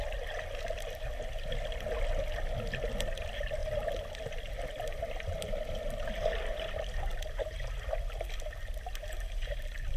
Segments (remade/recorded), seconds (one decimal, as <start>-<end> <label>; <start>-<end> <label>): 0.0-10.0 recorded